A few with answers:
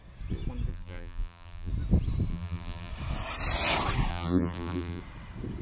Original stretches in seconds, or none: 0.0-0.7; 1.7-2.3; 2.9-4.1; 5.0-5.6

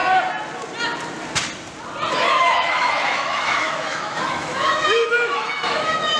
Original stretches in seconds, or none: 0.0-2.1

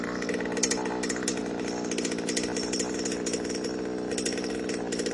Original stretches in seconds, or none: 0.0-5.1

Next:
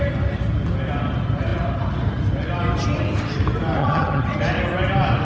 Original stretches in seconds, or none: 0.0-3.8; 4.4-5.2

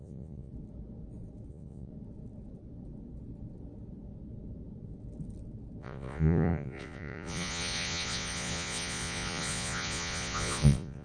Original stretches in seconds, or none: 0.5-1.5; 1.9-5.8

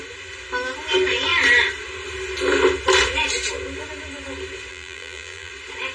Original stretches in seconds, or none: 0.0-4.7; 5.5-5.9